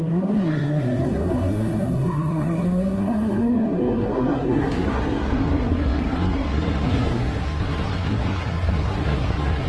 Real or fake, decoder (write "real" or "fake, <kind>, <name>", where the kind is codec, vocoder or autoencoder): fake, codec, SNAC